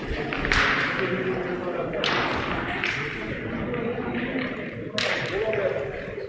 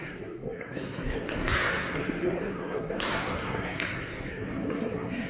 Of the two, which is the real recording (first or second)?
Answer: first